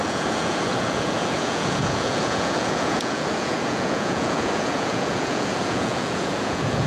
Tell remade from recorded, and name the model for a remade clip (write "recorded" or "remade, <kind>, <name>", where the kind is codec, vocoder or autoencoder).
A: remade, vocoder, Vocos